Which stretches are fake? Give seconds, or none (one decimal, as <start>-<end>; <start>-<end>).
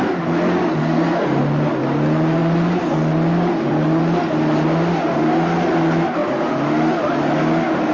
0.8-1.4